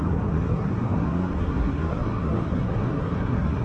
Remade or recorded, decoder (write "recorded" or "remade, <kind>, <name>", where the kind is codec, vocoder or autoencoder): remade, codec, SNAC